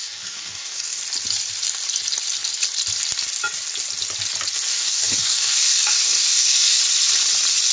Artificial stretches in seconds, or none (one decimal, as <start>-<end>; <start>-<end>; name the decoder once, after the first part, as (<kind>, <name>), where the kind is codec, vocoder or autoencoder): 0.0-1.0 (codec, DAC); 4.7-6.8